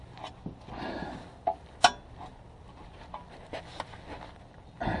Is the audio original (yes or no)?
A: yes